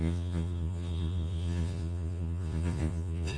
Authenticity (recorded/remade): remade